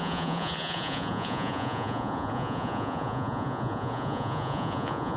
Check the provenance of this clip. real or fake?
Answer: fake